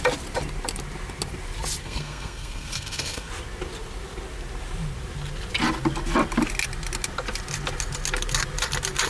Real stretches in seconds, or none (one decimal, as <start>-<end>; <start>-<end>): 0.0-1.8; 3.3-9.1